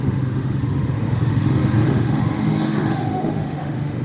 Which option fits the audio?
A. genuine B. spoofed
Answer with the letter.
B